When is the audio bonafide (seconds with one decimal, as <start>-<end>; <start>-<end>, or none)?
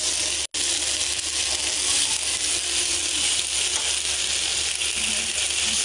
0.0-5.8